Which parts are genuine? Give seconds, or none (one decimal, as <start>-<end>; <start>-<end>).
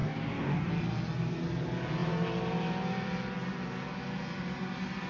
0.7-5.1